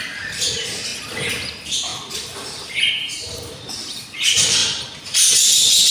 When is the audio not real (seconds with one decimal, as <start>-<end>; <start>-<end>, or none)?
0.0-0.9; 1.5-4.6; 5.4-5.9